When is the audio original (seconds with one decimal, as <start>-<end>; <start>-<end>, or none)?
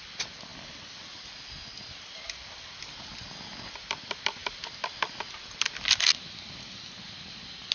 0.0-0.5; 2.8-7.7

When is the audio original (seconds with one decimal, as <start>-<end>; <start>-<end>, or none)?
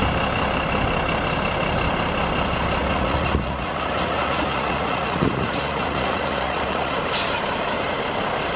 0.0-2.8; 7.0-8.6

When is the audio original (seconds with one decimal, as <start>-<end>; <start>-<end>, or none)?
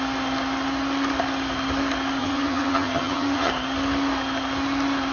0.0-2.2; 3.5-5.1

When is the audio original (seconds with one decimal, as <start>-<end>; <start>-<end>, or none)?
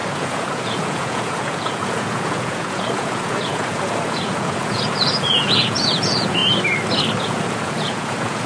6.4-7.2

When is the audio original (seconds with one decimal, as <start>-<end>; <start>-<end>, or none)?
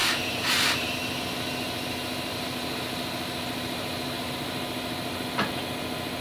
0.9-2.3; 4.3-6.2